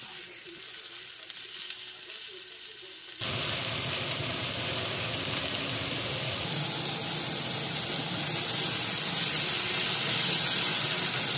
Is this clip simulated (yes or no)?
no